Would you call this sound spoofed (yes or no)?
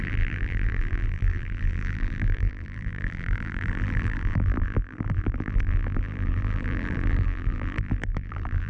yes